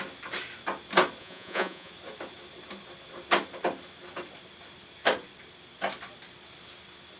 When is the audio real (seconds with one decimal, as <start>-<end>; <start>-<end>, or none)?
0.0-1.2; 1.9-7.2